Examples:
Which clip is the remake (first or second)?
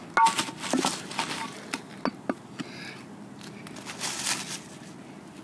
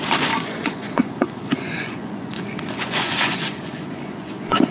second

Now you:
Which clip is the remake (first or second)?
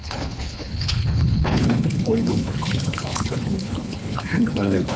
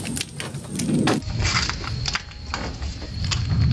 first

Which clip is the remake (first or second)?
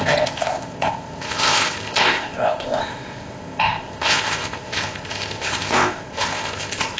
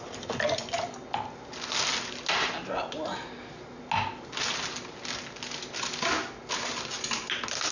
first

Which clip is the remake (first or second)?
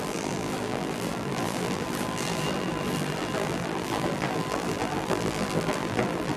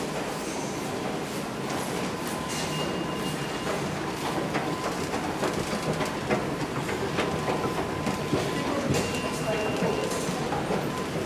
first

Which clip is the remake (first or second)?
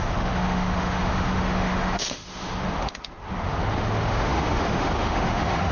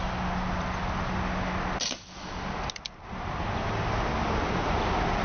first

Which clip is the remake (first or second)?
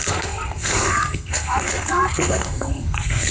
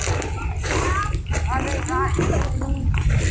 first